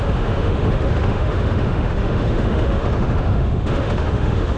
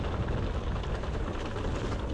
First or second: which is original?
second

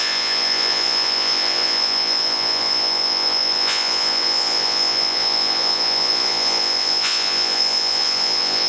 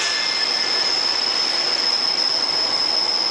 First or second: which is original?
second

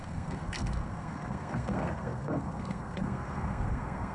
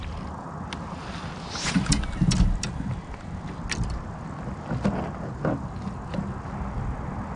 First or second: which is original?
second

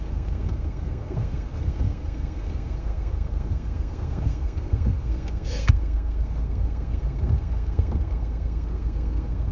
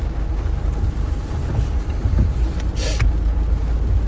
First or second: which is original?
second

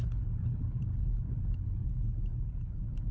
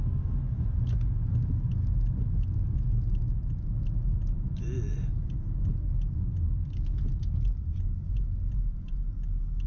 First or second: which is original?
second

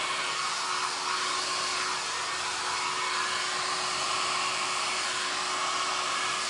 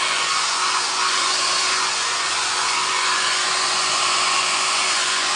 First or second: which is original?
first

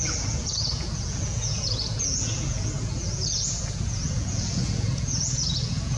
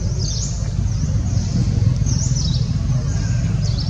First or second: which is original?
second